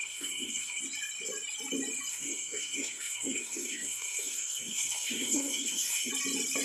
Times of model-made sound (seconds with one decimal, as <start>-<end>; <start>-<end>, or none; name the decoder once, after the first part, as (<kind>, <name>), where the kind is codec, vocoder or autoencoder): 0.0-0.8 (codec, SNAC); 2.1-6.1